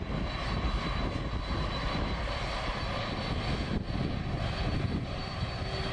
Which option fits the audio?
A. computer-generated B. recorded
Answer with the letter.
B